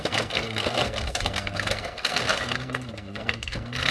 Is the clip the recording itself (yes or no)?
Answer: no